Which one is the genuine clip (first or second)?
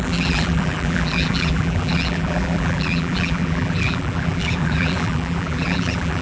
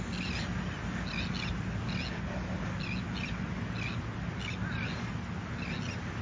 second